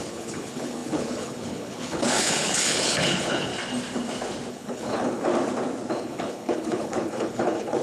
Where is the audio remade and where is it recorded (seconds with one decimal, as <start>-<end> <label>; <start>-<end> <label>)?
0.0-3.5 remade; 3.5-4.5 recorded; 4.5-5.3 remade; 5.3-5.9 recorded; 5.9-7.8 remade